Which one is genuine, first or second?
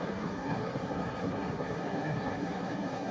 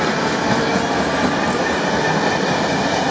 second